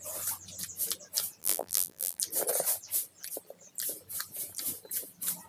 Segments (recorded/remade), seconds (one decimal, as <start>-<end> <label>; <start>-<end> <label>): 0.0-1.4 recorded; 1.4-2.2 remade; 2.2-5.5 recorded